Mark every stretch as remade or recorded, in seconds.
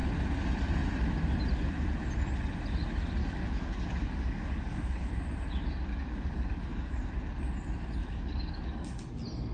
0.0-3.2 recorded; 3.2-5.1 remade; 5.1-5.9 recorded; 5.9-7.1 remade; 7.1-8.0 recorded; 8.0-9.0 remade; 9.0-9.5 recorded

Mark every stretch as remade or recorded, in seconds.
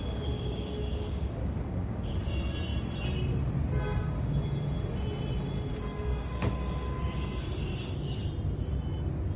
0.0-2.3 remade; 2.3-5.7 recorded; 5.7-8.3 remade; 8.3-9.4 recorded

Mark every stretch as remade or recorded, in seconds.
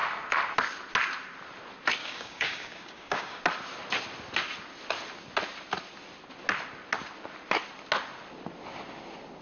0.0-2.0 recorded; 2.0-3.4 remade; 3.4-9.4 recorded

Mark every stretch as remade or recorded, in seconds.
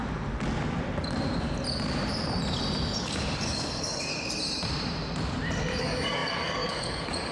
0.0-3.0 recorded; 3.0-4.1 remade; 4.1-5.8 recorded; 5.8-7.3 remade